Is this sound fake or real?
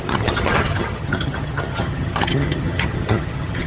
fake